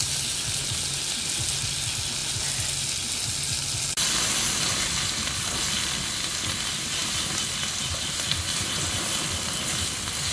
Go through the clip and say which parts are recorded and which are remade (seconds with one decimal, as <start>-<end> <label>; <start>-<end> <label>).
0.0-10.3 recorded